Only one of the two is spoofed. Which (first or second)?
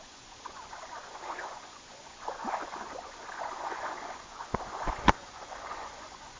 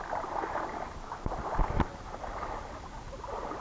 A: first